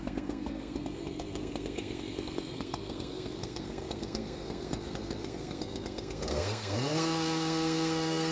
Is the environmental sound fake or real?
fake